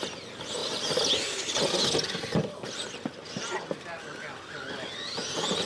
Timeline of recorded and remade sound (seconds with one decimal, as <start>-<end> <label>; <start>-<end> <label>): 0.0-5.7 recorded